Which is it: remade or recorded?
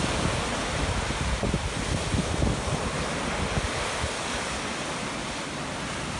recorded